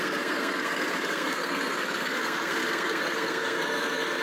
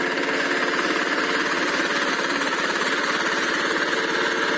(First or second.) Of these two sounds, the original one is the second